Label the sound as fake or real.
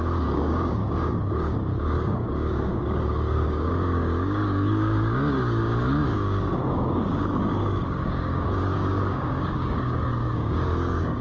fake